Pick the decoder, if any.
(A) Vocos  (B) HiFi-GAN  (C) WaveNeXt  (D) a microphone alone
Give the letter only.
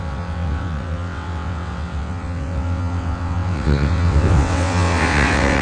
C